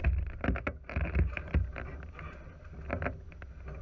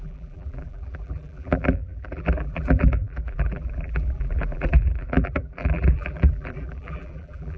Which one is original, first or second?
first